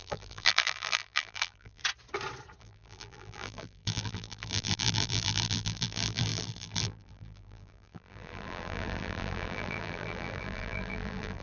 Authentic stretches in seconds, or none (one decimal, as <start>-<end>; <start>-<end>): 1.8-2.6